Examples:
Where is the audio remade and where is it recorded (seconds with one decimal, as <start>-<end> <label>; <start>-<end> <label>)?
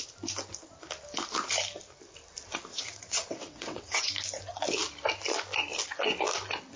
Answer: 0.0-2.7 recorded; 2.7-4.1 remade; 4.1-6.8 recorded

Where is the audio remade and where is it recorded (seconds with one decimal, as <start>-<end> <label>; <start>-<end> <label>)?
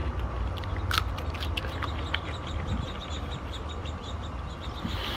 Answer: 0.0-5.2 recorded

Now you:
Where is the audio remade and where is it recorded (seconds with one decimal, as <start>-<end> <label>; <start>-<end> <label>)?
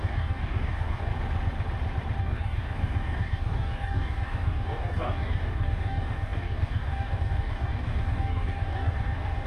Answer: 0.0-1.1 remade; 1.1-2.2 recorded; 2.2-9.5 remade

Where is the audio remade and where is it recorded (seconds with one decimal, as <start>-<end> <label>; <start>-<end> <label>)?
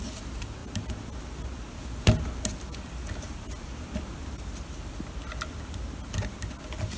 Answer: 0.0-7.0 recorded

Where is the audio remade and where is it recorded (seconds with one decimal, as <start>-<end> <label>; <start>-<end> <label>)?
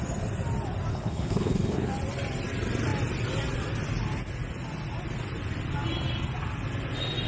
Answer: 0.0-0.9 recorded; 0.9-1.9 remade; 1.9-7.3 recorded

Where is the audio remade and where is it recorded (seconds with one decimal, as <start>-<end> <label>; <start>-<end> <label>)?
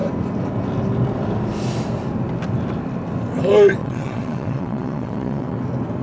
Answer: 0.0-3.8 recorded; 3.8-5.6 remade; 5.6-6.0 recorded